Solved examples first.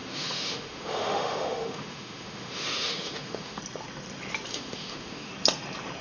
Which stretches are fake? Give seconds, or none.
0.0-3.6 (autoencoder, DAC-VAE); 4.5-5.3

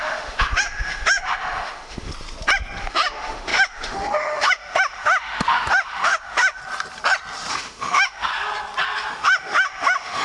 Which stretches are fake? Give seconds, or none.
0.0-2.1 (autoencoder, DAC-VAE); 2.8-6.6; 7.5-8.3; 9.1-10.2

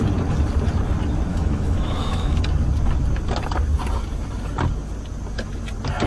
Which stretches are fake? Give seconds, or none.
1.3-2.4 (autoencoder, DAC-VAE)